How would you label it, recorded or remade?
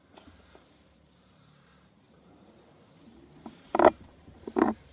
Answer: remade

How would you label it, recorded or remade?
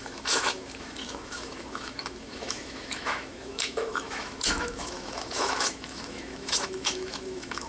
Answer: remade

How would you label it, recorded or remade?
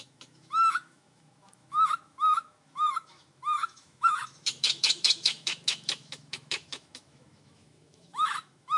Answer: remade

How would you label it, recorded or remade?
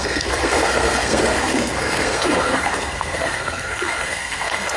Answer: remade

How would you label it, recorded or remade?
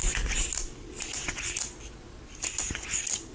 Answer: recorded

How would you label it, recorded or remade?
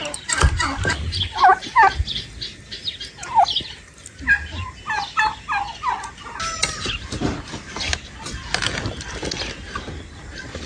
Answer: recorded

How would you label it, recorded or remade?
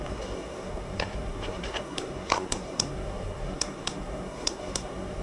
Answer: remade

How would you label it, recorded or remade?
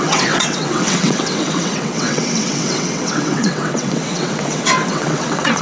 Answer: remade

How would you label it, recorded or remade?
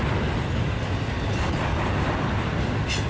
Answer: recorded